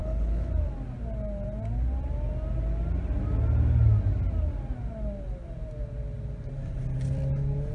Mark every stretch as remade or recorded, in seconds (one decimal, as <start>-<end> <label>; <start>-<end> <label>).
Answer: 0.0-0.5 remade; 0.5-7.7 recorded